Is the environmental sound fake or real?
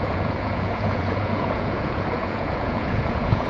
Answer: fake